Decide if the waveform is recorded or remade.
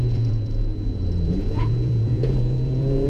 remade